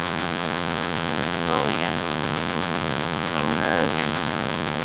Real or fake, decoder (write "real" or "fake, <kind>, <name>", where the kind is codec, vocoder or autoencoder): fake, vocoder, Vocos